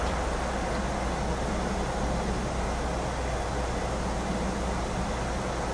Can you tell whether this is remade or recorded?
recorded